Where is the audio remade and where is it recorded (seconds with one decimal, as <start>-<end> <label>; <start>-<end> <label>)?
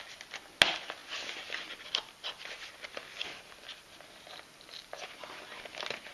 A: 0.0-6.1 recorded